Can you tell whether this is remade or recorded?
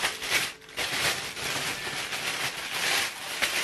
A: recorded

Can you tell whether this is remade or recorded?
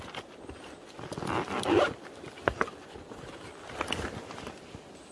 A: recorded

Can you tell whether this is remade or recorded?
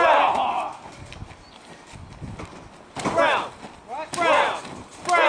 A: recorded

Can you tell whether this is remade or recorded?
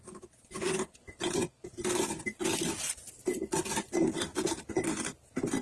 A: recorded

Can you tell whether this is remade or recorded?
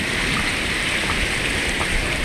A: remade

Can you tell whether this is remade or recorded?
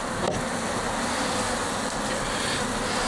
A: recorded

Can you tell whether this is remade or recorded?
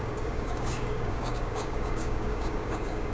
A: remade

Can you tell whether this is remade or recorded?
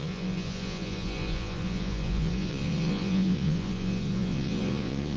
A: remade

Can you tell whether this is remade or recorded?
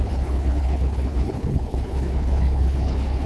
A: remade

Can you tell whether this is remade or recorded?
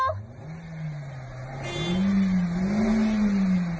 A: recorded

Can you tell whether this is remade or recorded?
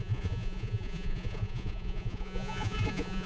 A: remade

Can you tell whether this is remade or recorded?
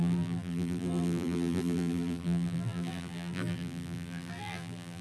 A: remade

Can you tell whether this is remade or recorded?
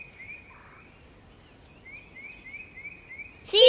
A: recorded